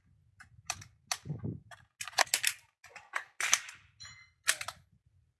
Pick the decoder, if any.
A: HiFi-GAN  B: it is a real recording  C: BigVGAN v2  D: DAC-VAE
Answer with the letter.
B